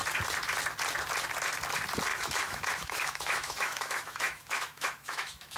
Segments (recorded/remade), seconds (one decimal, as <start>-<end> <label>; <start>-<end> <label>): 0.0-2.1 recorded; 2.1-5.6 remade

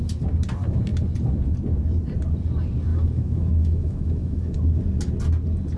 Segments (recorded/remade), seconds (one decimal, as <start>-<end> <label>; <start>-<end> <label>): 0.0-2.9 recorded; 2.9-4.6 remade; 4.6-5.8 recorded

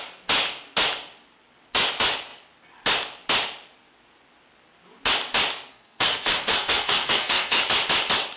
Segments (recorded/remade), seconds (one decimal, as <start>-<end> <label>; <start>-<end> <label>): 0.0-5.7 recorded; 5.7-7.6 remade; 7.6-8.4 recorded

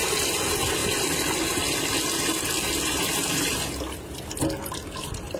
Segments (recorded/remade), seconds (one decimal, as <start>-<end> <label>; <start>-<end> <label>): 0.0-5.4 recorded

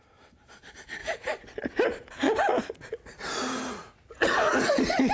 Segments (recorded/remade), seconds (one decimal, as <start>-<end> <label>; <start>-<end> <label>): 0.0-1.0 recorded; 1.0-1.5 remade; 1.5-2.5 recorded; 2.5-5.1 remade

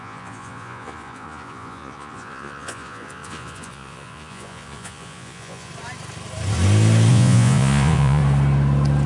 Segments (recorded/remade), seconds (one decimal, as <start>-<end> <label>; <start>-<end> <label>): 0.0-5.7 remade; 5.7-7.1 recorded; 7.1-8.2 remade; 8.2-9.1 recorded